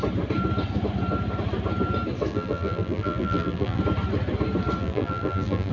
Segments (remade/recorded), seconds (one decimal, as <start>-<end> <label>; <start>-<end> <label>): 0.0-2.3 recorded; 2.3-3.8 remade; 3.8-4.8 recorded; 4.8-5.7 remade